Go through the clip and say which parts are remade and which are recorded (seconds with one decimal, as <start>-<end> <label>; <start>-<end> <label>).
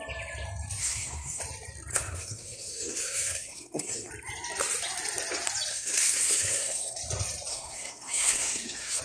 0.0-0.8 recorded; 0.8-1.4 remade; 1.4-1.9 recorded; 1.9-4.1 remade; 4.1-5.7 recorded; 5.7-7.0 remade; 7.0-7.5 recorded; 7.5-9.0 remade